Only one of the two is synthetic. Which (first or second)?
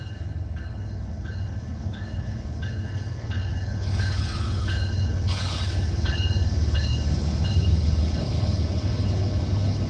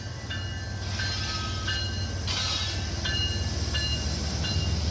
first